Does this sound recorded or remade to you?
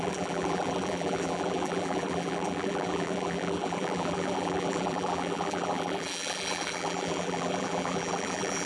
remade